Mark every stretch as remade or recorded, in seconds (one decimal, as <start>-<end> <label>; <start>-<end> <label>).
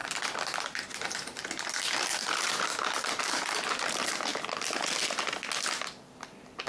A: 0.0-6.7 recorded